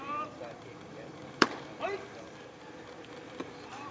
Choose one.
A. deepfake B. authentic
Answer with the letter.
A